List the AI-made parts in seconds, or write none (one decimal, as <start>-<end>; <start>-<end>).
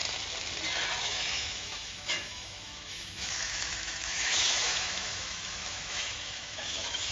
1.0-7.1